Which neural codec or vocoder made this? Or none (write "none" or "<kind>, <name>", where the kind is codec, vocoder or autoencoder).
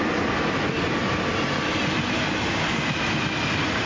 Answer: none